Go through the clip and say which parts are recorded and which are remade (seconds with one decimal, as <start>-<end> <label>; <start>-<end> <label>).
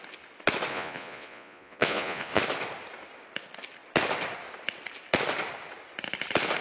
0.0-0.7 recorded; 0.7-2.4 remade; 2.4-6.6 recorded